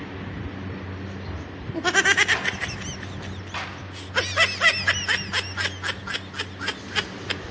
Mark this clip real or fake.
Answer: real